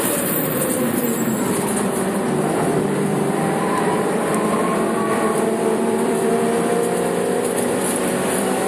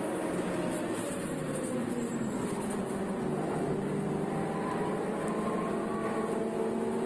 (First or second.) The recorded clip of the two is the second